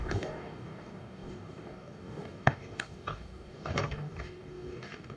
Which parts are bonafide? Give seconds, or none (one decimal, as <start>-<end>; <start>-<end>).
none